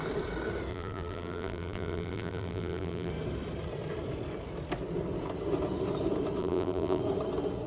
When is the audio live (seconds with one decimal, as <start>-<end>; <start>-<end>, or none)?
0.0-0.7; 3.1-6.4; 7.0-7.7